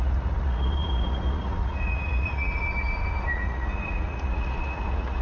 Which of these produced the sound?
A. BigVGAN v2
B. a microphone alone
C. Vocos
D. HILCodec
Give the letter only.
C